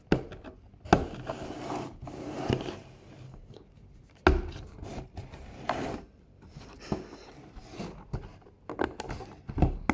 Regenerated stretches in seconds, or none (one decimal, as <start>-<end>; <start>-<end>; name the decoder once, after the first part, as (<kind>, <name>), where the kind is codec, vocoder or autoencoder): 4.9-6.6 (vocoder, BigVGAN v2)